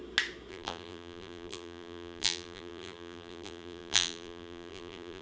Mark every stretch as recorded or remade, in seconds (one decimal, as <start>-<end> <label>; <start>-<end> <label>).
0.0-0.5 recorded; 0.5-5.2 remade